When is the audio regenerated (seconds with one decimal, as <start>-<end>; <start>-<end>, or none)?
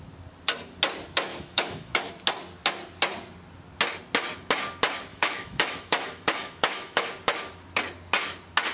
1.3-2.1; 5.1-7.1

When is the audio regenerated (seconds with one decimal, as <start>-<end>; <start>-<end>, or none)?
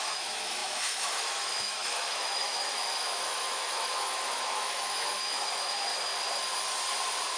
0.0-5.9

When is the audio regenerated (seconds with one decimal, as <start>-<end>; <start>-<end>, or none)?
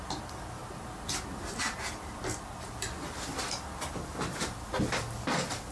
none